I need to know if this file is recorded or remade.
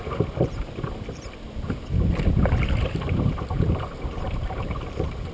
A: recorded